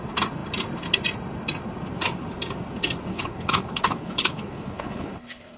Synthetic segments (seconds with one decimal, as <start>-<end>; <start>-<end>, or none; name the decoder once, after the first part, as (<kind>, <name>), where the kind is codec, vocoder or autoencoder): 3.1-5.6 (codec, HILCodec)